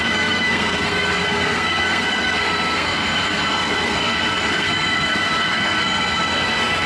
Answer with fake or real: fake